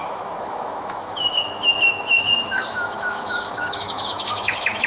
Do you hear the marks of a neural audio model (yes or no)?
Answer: yes